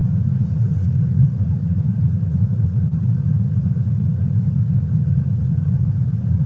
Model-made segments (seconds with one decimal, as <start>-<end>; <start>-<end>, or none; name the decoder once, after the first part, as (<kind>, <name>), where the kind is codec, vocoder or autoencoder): 0.0-6.5 (vocoder, Vocos)